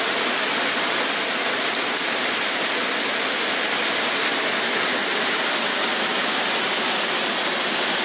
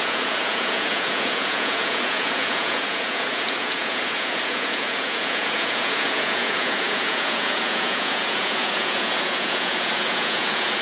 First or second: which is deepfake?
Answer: second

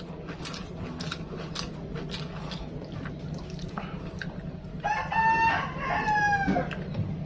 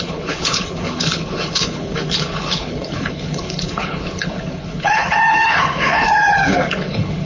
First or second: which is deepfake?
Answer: second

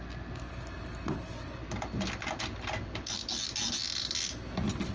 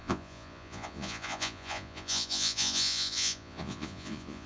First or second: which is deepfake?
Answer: second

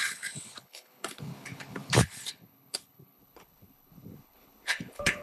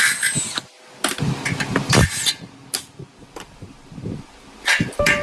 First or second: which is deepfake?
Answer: first